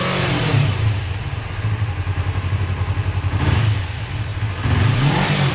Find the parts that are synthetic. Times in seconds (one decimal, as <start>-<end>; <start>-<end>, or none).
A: 0.0-1.0; 2.1-3.6